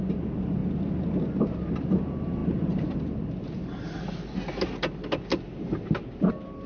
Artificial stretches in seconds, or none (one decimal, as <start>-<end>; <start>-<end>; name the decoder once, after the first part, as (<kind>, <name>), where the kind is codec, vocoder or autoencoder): none